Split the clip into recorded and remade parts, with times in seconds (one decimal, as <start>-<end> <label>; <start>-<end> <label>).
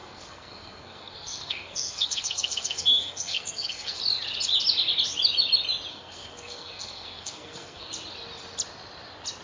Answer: 0.0-4.0 remade; 4.0-5.9 recorded; 5.9-7.9 remade; 7.9-9.4 recorded